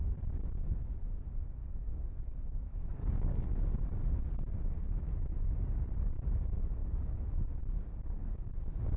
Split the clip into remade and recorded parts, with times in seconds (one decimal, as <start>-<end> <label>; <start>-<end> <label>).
0.0-1.6 recorded; 1.6-3.6 remade; 3.6-8.3 recorded; 8.3-9.0 remade

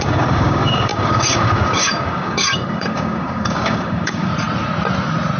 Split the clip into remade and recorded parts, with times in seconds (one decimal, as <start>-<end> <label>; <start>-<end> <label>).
0.0-4.3 remade; 4.3-5.4 recorded

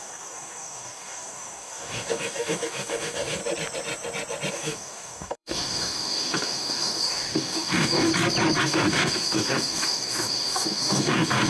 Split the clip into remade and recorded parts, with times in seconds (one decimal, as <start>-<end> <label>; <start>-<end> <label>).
0.0-3.4 remade; 3.4-4.5 recorded; 4.5-8.1 remade; 8.1-8.6 recorded; 8.6-11.5 remade

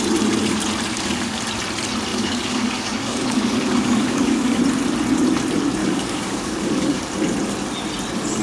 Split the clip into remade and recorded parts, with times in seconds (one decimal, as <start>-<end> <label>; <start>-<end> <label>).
0.0-0.9 recorded; 0.9-1.4 remade; 1.4-2.1 recorded; 2.1-4.6 remade; 4.6-5.8 recorded; 5.8-7.0 remade; 7.0-8.4 recorded

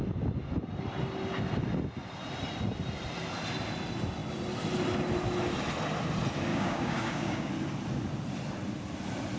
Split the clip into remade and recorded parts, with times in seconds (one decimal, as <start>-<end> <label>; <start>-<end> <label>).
0.0-6.5 recorded; 6.5-7.5 remade; 7.5-9.4 recorded